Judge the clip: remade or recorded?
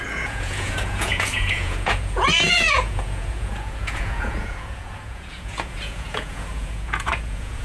remade